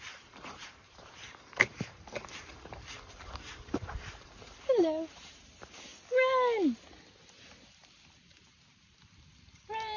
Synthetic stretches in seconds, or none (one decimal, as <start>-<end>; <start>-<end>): 0.0-5.9; 8.2-10.0